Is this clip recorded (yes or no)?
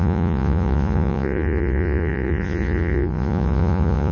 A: no